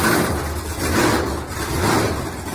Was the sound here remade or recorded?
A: recorded